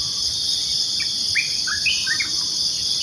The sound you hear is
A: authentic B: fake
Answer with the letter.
A